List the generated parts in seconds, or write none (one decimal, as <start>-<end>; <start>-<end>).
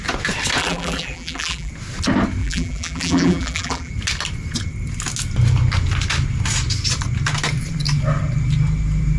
0.6-1.7; 2.4-3.9